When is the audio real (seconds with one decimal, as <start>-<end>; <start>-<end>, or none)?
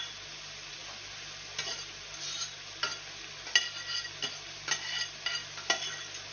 0.0-6.3